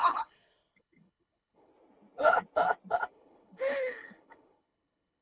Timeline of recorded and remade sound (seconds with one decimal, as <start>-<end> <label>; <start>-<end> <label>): 0.0-1.7 remade; 1.7-3.1 recorded; 3.1-5.2 remade